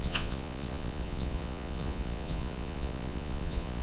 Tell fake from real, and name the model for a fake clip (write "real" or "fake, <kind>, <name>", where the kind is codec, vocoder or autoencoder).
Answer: fake, vocoder, Vocos